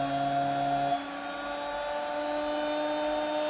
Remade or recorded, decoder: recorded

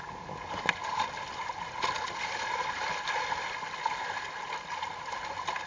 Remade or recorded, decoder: recorded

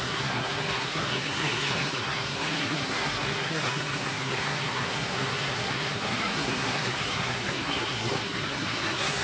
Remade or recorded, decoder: remade, codec, SNAC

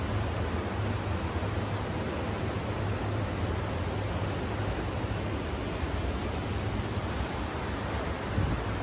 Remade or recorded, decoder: recorded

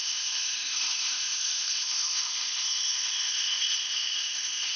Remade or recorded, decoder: remade, codec, ZipCodec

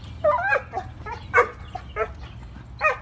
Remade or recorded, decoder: recorded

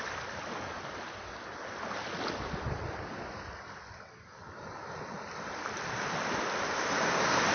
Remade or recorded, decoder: recorded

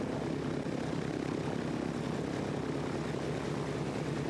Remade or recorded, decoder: recorded